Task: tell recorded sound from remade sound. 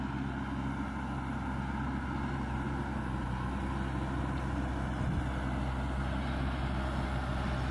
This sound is recorded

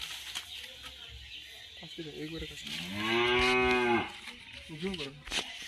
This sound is recorded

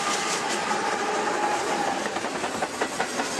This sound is recorded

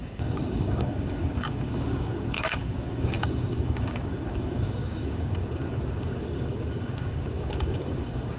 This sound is remade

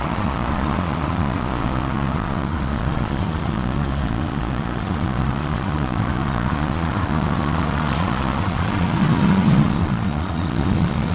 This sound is remade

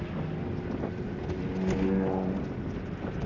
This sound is recorded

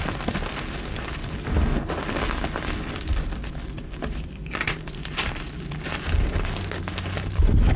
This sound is recorded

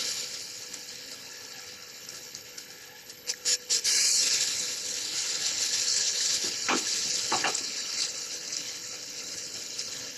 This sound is remade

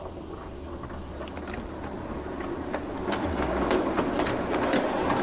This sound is recorded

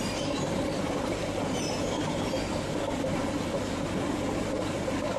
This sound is remade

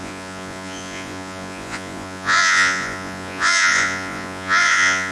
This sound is remade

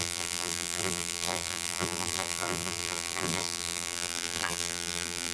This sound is remade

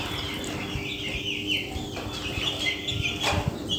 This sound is recorded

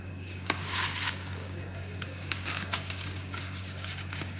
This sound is remade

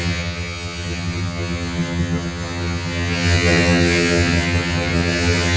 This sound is remade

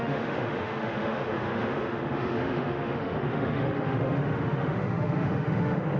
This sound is remade